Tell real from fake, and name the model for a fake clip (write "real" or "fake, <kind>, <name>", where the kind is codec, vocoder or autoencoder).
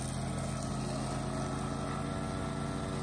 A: real